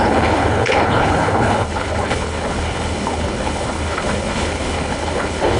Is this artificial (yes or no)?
yes